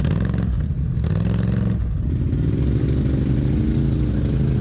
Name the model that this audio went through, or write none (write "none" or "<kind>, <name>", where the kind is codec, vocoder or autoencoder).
none